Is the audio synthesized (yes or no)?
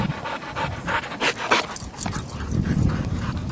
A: no